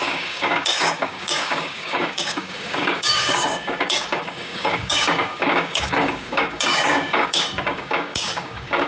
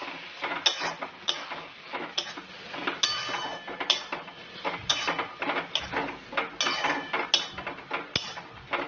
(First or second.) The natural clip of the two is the second